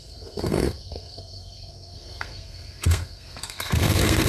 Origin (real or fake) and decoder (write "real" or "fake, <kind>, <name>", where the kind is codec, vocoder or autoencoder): fake, codec, SNAC